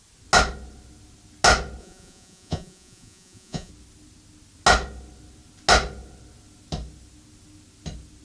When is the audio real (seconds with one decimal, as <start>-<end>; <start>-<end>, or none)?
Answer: 0.0-1.8; 3.7-8.2